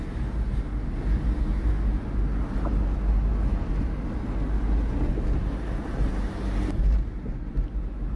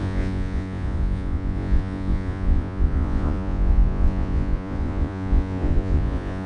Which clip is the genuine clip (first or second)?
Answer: first